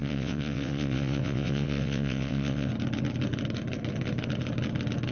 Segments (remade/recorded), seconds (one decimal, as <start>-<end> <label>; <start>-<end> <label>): 0.0-2.7 remade; 2.7-5.1 recorded